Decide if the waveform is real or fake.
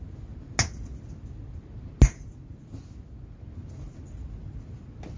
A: real